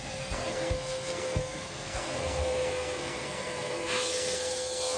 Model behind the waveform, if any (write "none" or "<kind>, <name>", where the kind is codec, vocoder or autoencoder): codec, SNAC